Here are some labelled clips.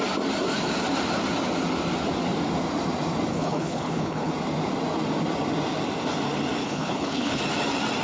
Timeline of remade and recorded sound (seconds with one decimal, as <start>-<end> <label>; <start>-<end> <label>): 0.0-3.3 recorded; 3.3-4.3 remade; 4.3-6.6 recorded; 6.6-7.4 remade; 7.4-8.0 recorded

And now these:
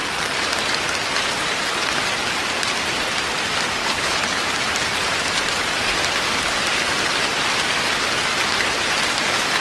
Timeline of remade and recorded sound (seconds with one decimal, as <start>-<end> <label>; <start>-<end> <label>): 0.0-3.8 recorded; 3.8-4.4 remade; 4.4-9.6 recorded

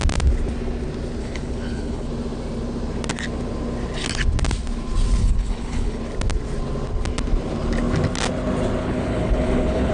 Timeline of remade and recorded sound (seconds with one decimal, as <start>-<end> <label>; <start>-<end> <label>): 0.0-1.2 recorded; 1.2-2.1 remade; 2.1-5.2 recorded; 5.2-6.0 remade; 6.0-8.8 recorded; 8.8-9.9 remade

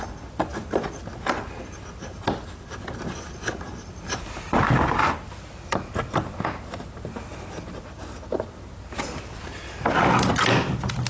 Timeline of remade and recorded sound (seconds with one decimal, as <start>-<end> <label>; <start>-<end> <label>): 0.0-11.1 recorded

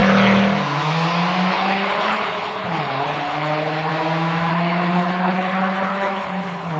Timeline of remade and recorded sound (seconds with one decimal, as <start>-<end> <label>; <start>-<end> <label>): 0.0-1.5 recorded; 1.5-3.9 remade; 3.9-4.5 recorded; 4.5-6.8 remade

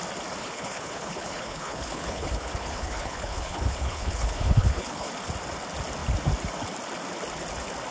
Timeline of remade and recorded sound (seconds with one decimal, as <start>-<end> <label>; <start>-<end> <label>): 0.0-0.4 recorded; 0.4-5.1 remade; 5.1-7.9 recorded